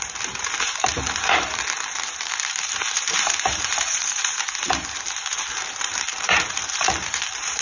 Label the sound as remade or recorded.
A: remade